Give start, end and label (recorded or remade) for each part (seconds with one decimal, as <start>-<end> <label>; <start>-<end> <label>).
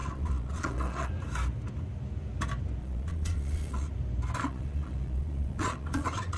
0.0-1.1 remade; 1.1-2.8 recorded; 2.8-3.9 remade; 3.9-4.4 recorded; 4.4-6.4 remade